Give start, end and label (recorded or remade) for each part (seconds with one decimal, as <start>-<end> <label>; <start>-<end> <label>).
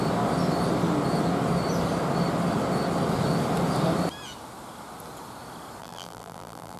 0.0-5.8 recorded; 5.8-6.8 remade